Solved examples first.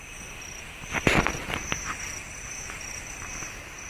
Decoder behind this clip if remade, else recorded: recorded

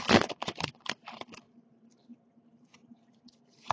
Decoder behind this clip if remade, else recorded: remade, vocoder, BigVGAN v2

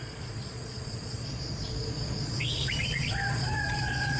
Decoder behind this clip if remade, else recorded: remade, vocoder, Vocos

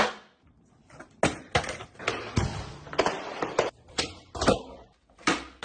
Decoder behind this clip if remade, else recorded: recorded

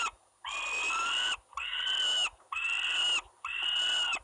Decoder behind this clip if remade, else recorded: recorded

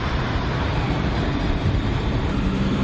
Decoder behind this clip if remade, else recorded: remade, vocoder, BigVGAN v2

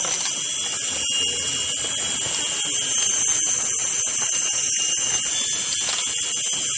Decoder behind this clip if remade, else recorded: recorded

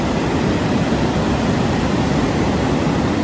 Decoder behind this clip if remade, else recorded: recorded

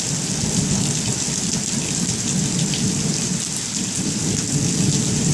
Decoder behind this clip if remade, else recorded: recorded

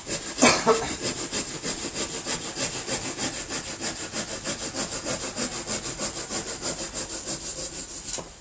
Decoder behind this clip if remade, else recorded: recorded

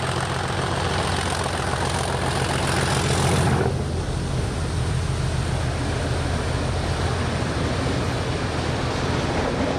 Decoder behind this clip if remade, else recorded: recorded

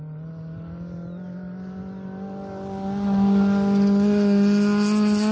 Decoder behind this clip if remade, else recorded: recorded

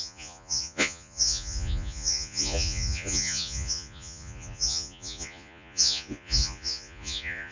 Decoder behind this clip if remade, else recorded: remade, vocoder, Vocos